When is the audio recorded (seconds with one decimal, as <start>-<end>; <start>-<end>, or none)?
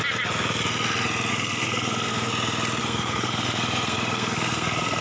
0.0-1.3; 2.3-2.8